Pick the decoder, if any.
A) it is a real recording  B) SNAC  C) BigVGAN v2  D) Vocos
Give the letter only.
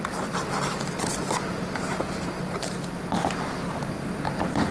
A